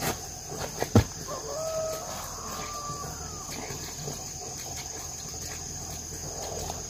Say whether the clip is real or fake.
real